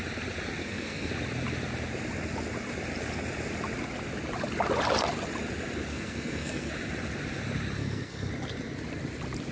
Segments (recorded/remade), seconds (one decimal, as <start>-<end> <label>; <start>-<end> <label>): 0.0-0.6 recorded; 0.6-1.1 remade; 1.1-5.9 recorded; 5.9-6.7 remade; 6.7-7.8 recorded; 7.8-8.3 remade; 8.3-9.5 recorded